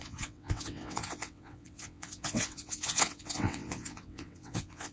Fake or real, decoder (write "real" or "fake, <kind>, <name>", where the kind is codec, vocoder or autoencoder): fake, vocoder, WaveNeXt